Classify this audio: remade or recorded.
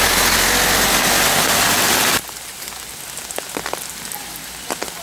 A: recorded